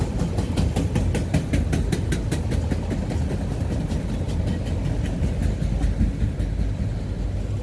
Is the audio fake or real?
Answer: real